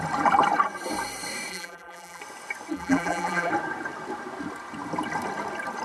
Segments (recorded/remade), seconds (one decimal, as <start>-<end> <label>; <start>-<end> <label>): 0.0-1.5 recorded; 1.5-2.2 remade; 2.2-2.7 recorded; 2.7-3.5 remade; 3.5-5.8 recorded